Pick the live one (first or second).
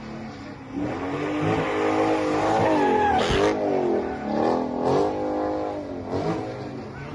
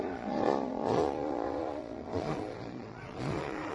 first